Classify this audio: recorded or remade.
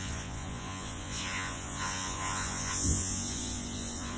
remade